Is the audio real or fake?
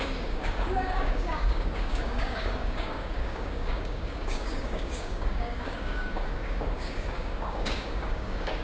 fake